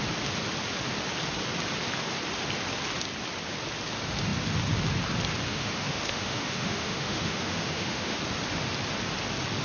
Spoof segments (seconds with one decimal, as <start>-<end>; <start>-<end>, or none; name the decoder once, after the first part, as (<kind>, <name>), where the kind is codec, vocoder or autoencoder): 5.5-8.2 (autoencoder, DAC-VAE)